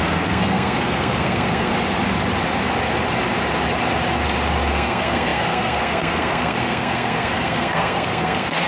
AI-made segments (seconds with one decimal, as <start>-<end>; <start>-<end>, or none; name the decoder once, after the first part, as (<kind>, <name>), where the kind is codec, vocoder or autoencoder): 0.0-1.7 (codec, SNAC); 4.7-8.7